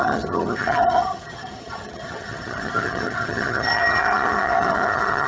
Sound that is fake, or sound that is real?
fake